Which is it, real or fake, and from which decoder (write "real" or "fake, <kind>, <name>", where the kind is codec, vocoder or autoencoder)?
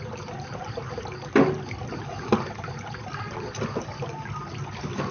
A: real